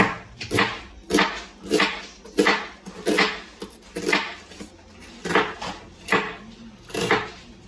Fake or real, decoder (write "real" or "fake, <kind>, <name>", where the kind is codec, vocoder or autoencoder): real